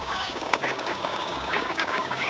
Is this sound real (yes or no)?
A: no